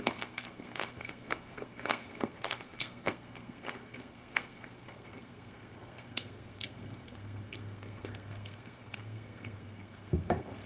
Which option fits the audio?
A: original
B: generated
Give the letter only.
B